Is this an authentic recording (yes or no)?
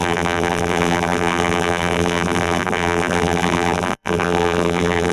no